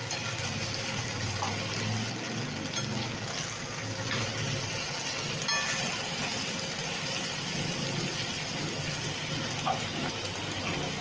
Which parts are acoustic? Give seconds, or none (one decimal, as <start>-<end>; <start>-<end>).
0.0-11.0